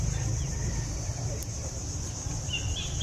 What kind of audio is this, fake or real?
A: real